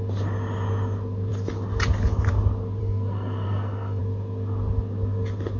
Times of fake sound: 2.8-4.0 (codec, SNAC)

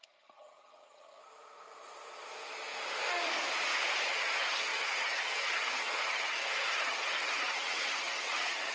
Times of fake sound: 0.0-1.2 (vocoder, HiFi-GAN); 4.1-8.7

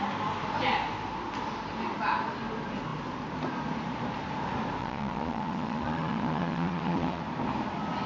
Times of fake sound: 4.8-7.2 (vocoder, Vocos)

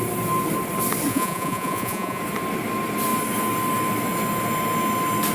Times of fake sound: 1.1-2.2 (vocoder, Vocos)

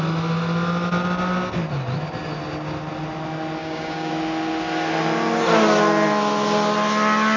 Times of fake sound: 3.6-4.1 (codec, DAC)